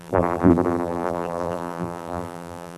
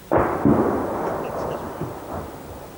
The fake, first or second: first